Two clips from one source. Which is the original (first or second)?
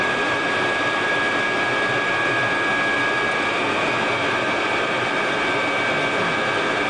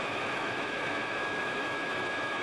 first